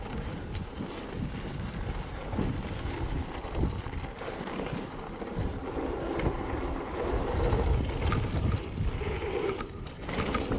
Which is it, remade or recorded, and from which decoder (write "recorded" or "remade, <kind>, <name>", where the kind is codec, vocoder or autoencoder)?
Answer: recorded